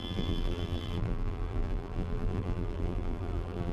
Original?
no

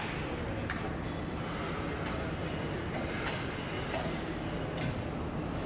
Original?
yes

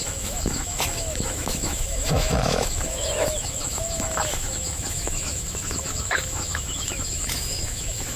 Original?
no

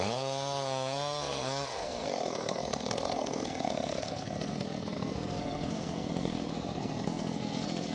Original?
no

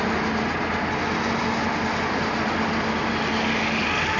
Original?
yes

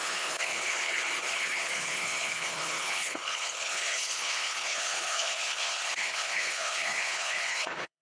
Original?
no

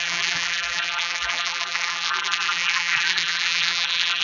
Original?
no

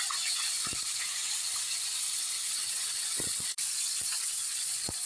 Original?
no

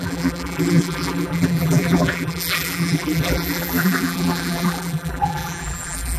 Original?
no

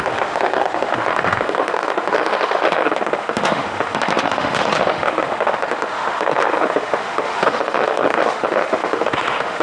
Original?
no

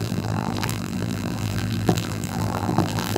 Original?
no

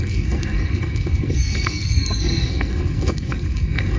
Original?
no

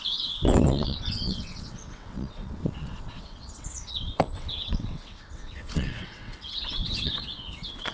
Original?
no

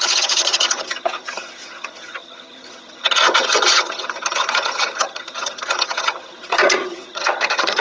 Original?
no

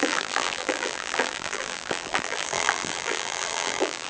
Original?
no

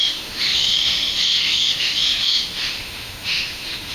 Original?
no